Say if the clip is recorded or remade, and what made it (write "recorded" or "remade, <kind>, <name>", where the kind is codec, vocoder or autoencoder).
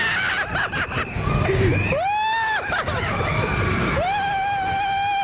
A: recorded